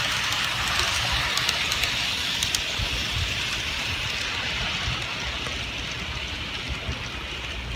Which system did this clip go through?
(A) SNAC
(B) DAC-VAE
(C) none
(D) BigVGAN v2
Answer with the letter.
C